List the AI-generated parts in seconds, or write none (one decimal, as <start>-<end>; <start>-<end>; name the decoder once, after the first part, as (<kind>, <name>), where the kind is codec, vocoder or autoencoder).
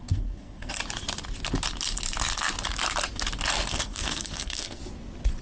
0.0-0.8 (codec, SNAC); 3.7-4.8